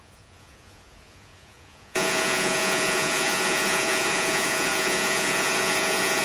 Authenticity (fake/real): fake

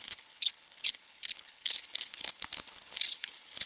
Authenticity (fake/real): fake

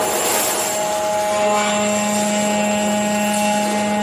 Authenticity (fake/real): real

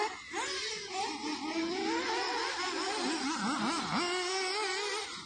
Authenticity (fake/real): real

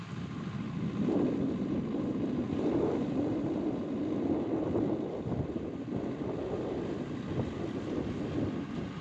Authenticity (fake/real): real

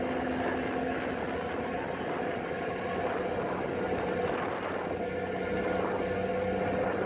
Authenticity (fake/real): real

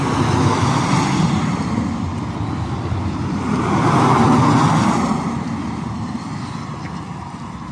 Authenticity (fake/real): real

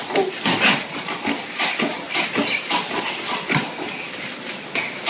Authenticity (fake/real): real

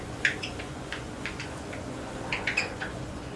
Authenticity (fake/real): fake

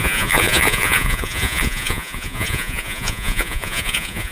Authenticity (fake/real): fake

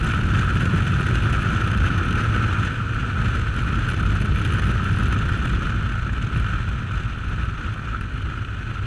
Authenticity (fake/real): real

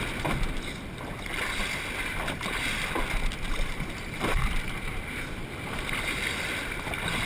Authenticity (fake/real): real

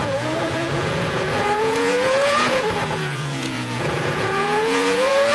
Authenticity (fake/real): fake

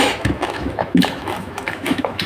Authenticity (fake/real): fake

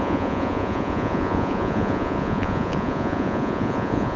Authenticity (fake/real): fake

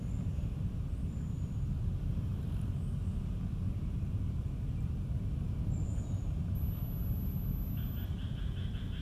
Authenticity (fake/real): real